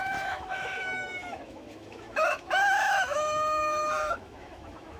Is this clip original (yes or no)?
no